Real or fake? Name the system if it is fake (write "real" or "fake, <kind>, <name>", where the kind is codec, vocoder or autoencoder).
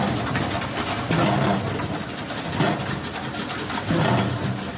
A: real